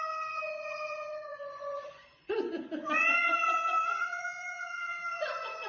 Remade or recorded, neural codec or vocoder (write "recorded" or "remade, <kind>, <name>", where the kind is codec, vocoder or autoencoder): remade, vocoder, Vocos